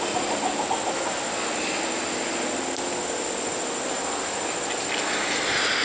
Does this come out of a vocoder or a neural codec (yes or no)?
no